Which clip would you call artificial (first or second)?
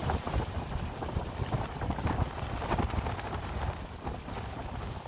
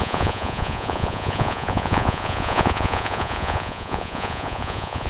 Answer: second